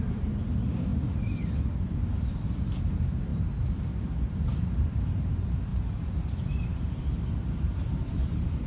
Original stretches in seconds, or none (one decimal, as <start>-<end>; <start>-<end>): 0.9-1.9; 5.7-6.3